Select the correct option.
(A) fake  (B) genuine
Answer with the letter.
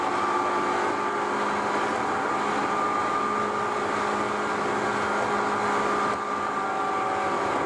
B